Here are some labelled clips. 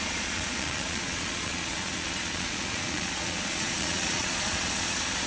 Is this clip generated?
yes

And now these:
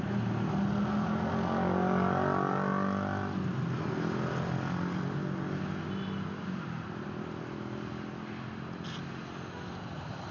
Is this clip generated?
no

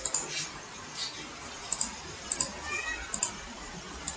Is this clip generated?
no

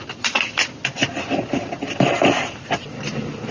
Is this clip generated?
no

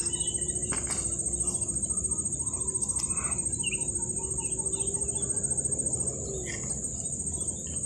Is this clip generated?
no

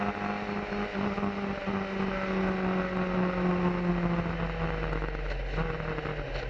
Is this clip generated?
no